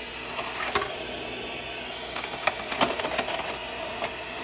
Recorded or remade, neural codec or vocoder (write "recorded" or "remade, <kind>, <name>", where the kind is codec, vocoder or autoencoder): recorded